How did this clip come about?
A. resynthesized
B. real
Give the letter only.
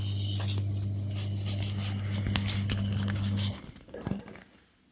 B